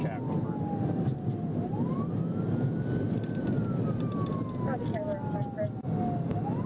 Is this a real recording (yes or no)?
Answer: yes